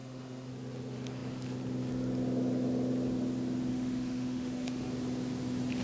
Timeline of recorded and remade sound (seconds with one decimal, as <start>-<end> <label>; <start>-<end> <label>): 0.0-0.5 remade; 0.5-3.7 recorded; 3.7-4.9 remade; 4.9-5.8 recorded